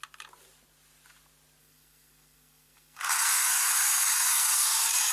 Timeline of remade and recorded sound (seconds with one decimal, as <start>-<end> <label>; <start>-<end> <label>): 0.0-1.6 recorded; 1.6-5.1 remade